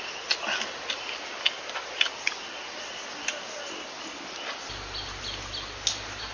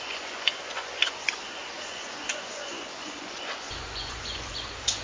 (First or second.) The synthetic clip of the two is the second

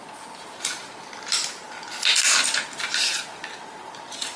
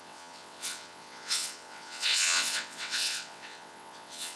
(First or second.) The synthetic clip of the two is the second